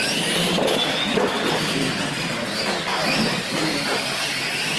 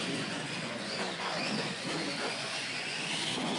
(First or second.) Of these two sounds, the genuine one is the first